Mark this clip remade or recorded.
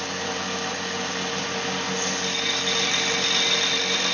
recorded